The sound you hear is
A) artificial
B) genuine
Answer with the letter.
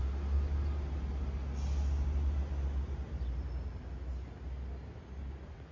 B